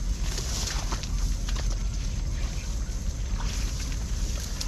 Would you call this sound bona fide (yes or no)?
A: yes